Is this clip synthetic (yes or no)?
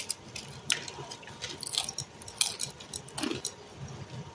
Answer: no